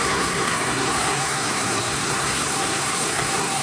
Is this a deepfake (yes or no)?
yes